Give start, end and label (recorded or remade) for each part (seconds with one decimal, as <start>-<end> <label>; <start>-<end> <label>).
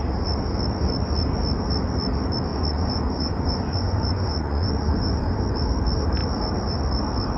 0.0-2.5 recorded; 2.5-5.4 remade; 5.4-7.4 recorded